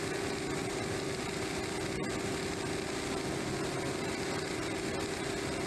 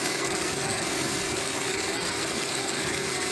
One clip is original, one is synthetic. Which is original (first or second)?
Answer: first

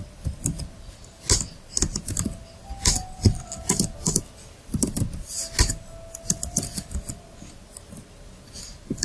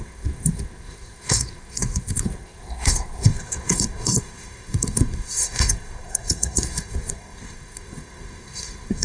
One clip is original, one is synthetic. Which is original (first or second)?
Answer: first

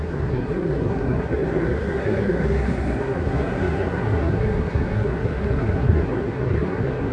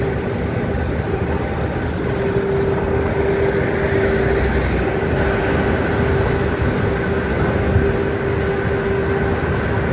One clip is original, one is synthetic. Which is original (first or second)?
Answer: second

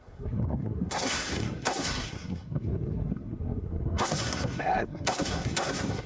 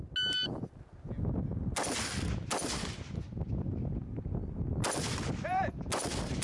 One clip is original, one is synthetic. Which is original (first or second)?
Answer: second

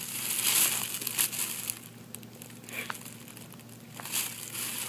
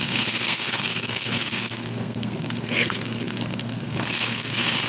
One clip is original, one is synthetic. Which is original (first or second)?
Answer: first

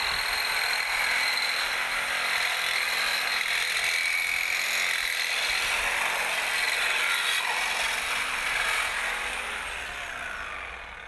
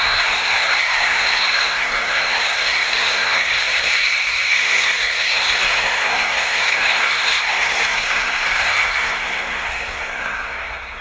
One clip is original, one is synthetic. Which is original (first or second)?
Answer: first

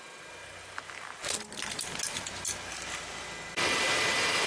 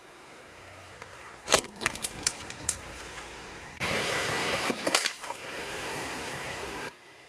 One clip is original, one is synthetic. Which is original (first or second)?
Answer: first